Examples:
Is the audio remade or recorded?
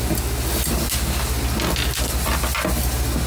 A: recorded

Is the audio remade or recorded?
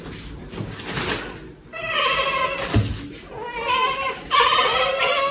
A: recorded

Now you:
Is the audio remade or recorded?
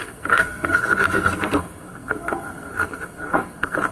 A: remade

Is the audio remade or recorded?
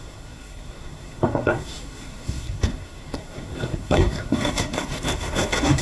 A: remade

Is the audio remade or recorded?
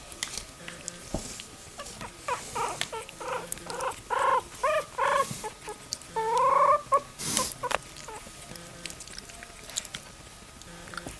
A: recorded